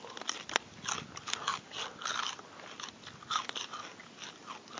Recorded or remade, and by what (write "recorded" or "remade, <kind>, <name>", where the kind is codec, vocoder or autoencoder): recorded